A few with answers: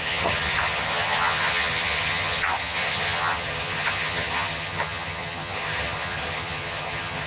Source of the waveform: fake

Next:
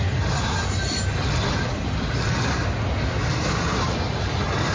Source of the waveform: real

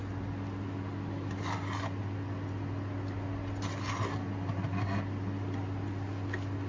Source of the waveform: real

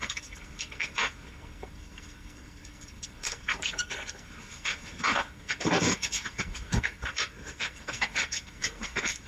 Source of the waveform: fake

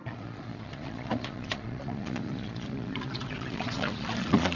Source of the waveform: fake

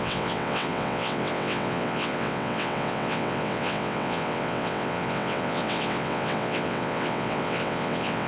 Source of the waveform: fake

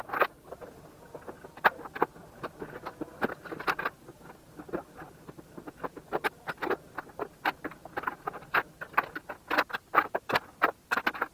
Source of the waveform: real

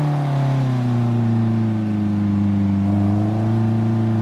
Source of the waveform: fake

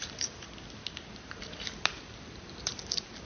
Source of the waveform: real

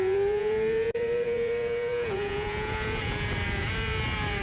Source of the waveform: fake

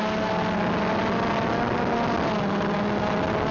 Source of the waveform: real